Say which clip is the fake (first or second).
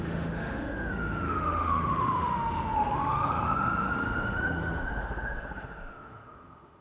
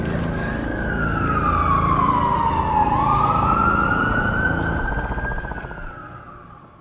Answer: first